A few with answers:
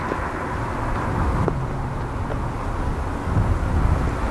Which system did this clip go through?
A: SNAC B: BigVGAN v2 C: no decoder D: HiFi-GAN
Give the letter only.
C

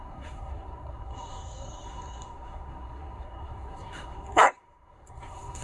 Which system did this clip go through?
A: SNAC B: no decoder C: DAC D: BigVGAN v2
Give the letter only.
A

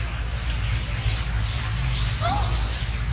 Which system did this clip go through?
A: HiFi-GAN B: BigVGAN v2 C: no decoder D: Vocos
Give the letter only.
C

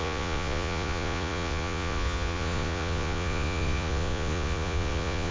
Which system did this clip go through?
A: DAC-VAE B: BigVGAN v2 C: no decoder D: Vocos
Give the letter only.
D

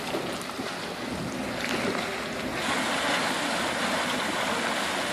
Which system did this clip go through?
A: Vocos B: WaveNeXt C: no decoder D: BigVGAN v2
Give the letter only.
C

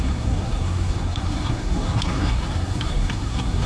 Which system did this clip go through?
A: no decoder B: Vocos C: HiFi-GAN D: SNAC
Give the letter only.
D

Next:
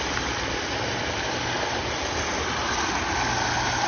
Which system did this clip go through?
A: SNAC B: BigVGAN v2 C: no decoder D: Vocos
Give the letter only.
C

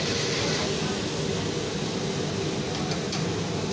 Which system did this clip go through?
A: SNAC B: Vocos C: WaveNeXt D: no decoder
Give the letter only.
D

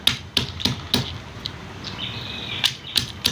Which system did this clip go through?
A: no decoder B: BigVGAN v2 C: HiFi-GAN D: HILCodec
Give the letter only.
A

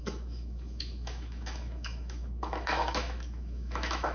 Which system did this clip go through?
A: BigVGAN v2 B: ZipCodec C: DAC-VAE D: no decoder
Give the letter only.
C